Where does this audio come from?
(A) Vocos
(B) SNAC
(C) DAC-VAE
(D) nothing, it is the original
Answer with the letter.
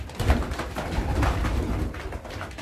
D